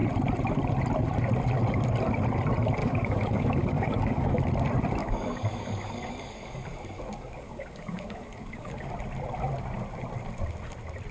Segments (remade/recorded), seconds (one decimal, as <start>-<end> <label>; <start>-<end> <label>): 0.0-2.8 recorded; 2.8-4.4 remade; 4.4-5.0 recorded; 5.0-8.9 remade; 8.9-11.1 recorded